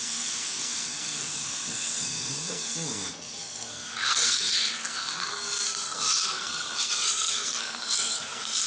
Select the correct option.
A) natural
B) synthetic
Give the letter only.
B